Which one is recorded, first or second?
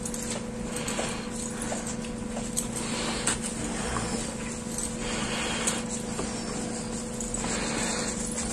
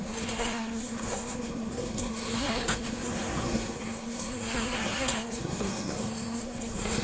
first